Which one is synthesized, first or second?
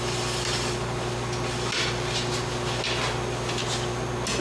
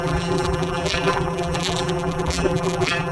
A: second